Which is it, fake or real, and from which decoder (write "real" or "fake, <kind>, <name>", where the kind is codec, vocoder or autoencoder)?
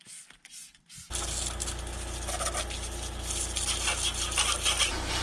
real